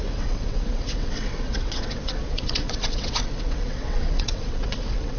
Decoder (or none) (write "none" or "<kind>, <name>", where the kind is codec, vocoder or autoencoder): vocoder, WaveNeXt